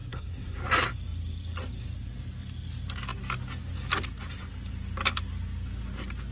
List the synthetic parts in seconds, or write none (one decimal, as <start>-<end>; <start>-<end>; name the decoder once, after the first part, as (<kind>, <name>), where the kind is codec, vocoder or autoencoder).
0.0-0.6 (codec, SNAC)